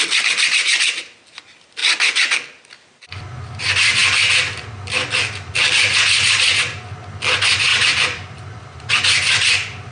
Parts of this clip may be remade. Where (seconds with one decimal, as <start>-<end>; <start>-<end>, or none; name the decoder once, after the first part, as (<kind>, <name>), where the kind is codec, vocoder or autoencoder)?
1.8-3.2 (vocoder, BigVGAN v2); 7.7-8.9